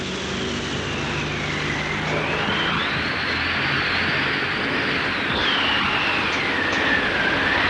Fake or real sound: real